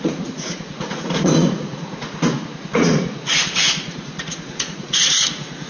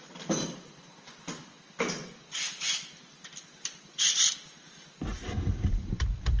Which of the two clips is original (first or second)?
second